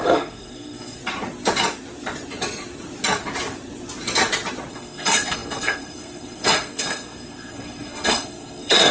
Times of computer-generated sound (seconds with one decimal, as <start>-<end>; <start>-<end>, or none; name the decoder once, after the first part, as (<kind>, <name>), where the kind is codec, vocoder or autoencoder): 0.0-1.0 (codec, SNAC); 4.7-8.9